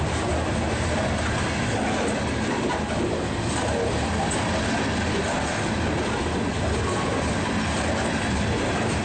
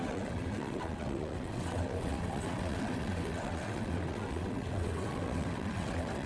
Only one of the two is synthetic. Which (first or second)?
second